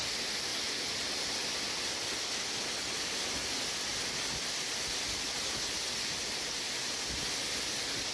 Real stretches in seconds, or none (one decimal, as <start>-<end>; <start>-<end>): 0.0-8.1